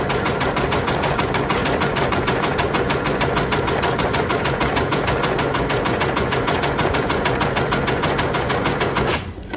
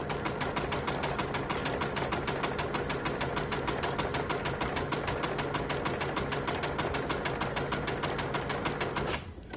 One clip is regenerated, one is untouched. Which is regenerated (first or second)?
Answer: first